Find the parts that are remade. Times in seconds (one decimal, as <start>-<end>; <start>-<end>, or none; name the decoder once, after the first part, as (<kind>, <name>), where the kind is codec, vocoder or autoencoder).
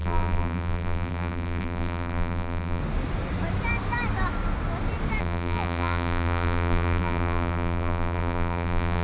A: 0.0-2.8 (vocoder, BigVGAN v2); 5.2-9.0